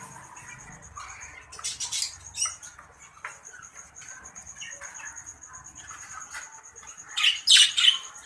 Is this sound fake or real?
real